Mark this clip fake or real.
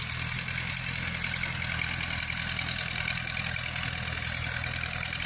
real